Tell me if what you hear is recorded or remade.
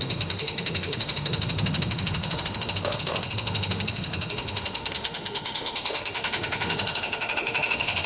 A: remade